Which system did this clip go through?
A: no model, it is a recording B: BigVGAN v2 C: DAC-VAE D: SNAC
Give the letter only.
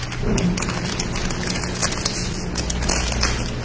A